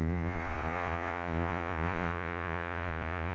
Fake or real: fake